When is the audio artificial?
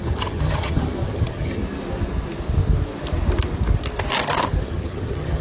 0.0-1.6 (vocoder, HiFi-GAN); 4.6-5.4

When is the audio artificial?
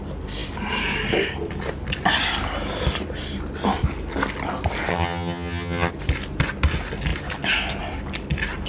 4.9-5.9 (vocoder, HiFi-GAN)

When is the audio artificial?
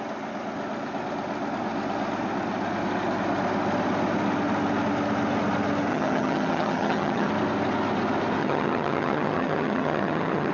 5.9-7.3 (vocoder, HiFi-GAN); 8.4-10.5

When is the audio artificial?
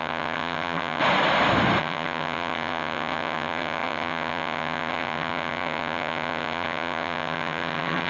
0.0-1.0 (vocoder, HiFi-GAN); 1.8-8.1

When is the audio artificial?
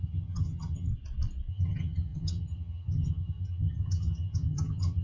0.0-0.9 (vocoder, HiFi-GAN); 1.5-5.0